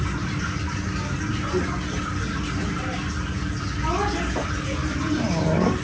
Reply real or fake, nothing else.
real